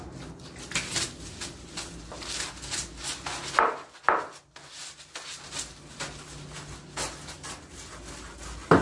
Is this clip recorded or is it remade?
recorded